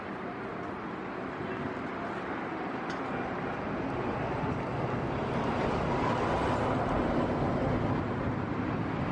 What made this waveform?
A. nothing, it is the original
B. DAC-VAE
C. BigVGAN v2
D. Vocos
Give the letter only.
A